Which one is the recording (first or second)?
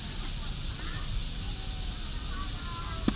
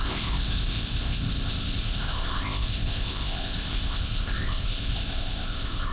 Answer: first